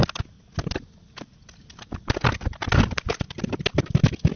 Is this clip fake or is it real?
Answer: real